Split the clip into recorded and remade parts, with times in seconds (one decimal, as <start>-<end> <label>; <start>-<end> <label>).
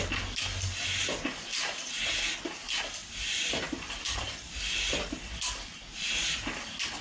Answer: 0.0-1.5 recorded; 1.5-2.0 remade; 2.0-3.0 recorded; 3.0-4.6 remade; 4.6-7.0 recorded